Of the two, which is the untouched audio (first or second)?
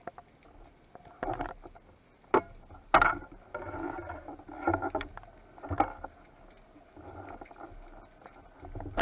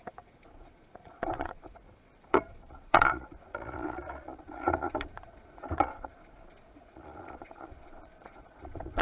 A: first